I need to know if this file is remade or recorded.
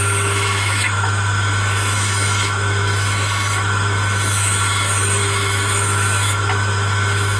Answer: remade